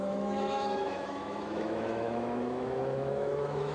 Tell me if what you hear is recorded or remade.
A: remade